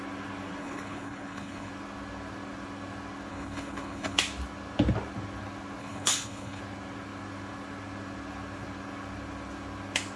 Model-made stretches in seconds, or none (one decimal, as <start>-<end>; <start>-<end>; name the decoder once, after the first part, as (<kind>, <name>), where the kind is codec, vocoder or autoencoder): 0.6-1.7 (codec, HILCodec); 3.3-4.2; 5.8-6.6